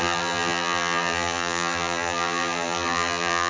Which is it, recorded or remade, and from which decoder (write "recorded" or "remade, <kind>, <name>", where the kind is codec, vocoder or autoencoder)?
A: remade, vocoder, BigVGAN v2